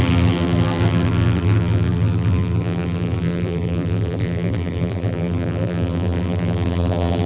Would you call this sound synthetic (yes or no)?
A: yes